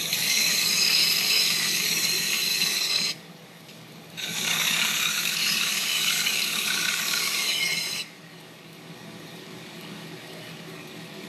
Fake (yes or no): yes